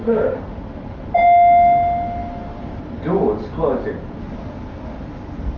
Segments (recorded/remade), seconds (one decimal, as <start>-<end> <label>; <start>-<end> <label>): 0.0-0.5 remade; 0.5-5.6 recorded